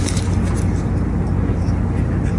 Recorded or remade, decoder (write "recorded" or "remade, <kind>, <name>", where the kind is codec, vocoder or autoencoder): recorded